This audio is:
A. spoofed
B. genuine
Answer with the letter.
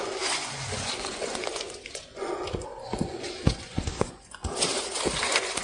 A